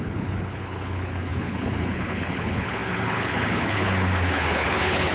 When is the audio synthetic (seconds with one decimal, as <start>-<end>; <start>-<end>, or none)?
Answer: 0.0-5.1